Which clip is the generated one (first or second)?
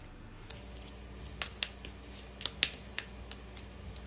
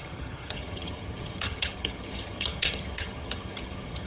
second